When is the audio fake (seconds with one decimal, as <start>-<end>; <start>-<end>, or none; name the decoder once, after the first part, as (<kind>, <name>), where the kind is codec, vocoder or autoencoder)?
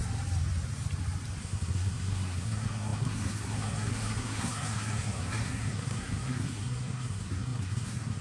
1.4-8.2 (codec, SNAC)